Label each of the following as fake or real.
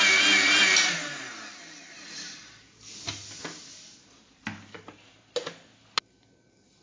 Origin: real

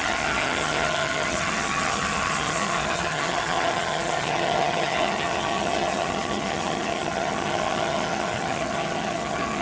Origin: fake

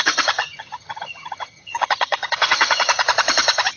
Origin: fake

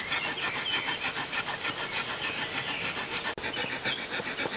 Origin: real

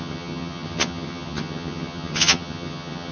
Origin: fake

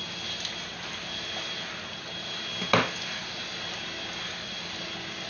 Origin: real